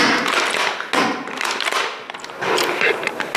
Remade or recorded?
recorded